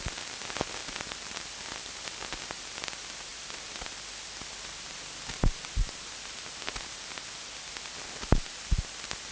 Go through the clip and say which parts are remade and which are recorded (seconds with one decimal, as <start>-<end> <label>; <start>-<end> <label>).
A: 0.0-0.8 recorded; 0.8-1.5 remade; 1.5-9.3 recorded